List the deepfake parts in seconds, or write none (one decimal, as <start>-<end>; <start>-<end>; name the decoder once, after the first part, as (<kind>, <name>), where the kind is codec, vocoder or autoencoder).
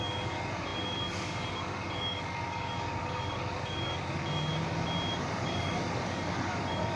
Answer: 0.0-4.5 (codec, DAC); 5.1-7.0